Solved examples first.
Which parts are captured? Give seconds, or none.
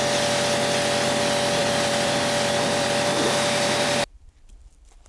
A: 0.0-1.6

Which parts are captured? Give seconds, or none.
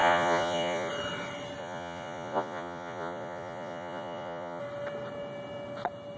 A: 0.9-1.6; 4.6-6.2